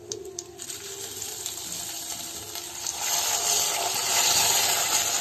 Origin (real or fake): real